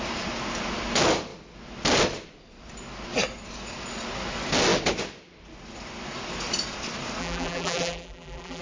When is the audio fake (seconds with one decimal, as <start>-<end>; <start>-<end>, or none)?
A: 7.2-8.6